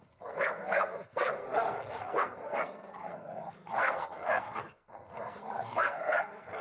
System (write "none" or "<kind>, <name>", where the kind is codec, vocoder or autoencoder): codec, SNAC